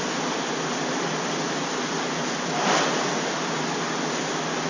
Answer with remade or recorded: recorded